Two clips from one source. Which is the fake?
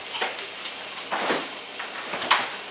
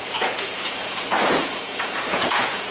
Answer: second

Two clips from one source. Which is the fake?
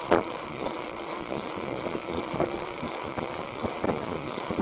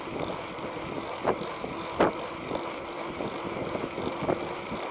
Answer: first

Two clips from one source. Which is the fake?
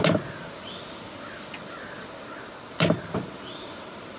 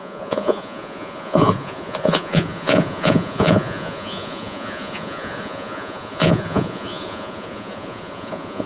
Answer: second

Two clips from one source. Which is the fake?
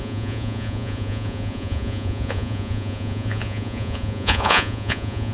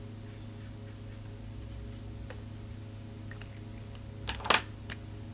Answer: first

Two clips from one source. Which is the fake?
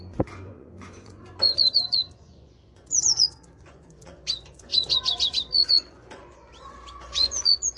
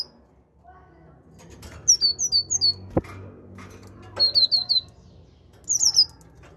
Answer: first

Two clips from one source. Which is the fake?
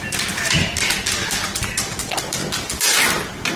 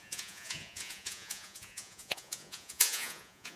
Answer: second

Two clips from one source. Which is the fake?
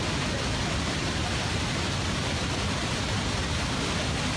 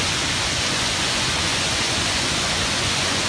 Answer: second